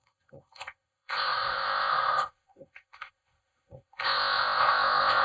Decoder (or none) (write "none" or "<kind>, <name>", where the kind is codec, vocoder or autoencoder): codec, ZipCodec